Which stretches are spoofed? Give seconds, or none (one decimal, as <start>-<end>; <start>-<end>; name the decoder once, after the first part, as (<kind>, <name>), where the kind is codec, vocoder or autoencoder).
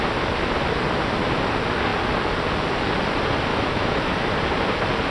3.5-4.3 (autoencoder, DAC-VAE)